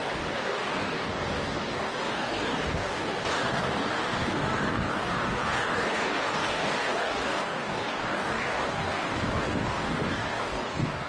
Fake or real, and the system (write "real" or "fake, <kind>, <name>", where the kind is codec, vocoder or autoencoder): fake, codec, DAC